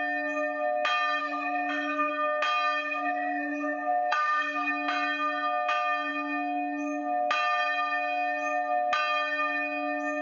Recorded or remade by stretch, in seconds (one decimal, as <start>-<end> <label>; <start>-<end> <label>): 0.0-1.2 recorded; 1.2-2.1 remade; 2.1-2.8 recorded; 2.8-4.7 remade; 4.7-10.2 recorded